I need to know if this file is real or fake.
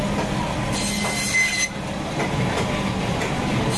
real